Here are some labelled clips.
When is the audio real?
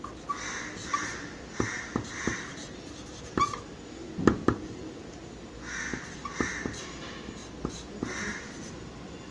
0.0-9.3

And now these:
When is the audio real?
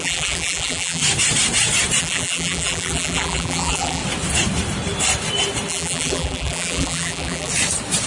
1.0-2.0; 4.0-5.7; 7.5-8.1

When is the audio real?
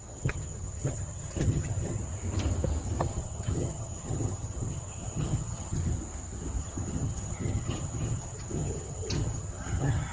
2.0-3.0; 5.8-6.6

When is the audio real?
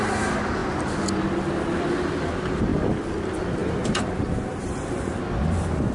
0.0-3.6; 4.1-5.9